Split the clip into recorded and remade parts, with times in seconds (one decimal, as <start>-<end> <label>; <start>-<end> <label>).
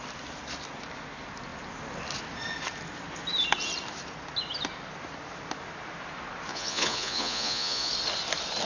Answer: 0.0-6.5 recorded; 6.5-7.9 remade; 7.9-8.7 recorded